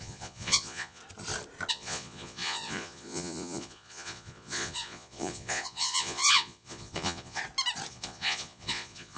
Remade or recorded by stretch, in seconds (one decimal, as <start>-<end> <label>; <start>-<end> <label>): 0.0-1.0 remade; 1.0-1.7 recorded; 1.7-7.4 remade; 7.4-7.9 recorded; 7.9-9.2 remade